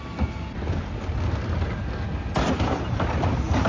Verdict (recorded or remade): recorded